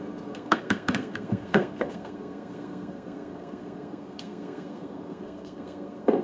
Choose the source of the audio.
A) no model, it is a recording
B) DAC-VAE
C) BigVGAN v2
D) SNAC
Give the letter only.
D